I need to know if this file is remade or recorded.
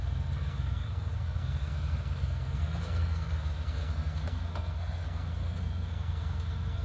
remade